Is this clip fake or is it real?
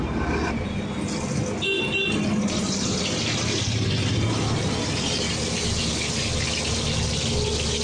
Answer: real